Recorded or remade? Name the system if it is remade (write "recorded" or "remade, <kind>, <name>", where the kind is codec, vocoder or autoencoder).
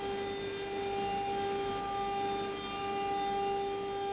recorded